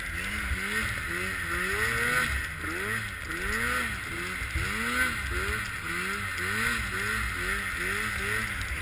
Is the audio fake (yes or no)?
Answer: no